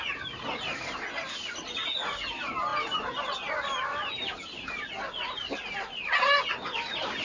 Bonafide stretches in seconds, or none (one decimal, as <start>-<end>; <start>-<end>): 0.0-7.2